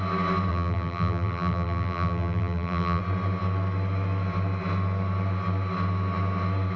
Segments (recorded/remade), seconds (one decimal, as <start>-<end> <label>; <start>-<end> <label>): 0.0-0.5 recorded; 0.5-3.0 remade; 3.0-6.8 recorded